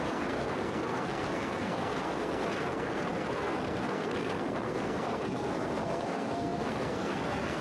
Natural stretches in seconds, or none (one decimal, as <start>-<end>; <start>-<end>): none